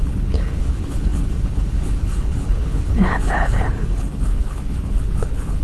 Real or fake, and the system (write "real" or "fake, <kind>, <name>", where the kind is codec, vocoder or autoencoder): fake, codec, HILCodec